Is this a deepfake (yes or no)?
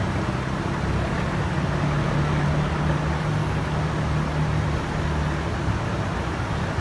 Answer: no